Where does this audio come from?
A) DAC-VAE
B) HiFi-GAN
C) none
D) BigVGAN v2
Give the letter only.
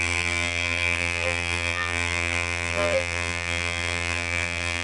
D